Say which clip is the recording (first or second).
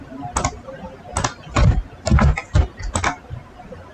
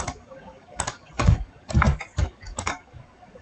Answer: first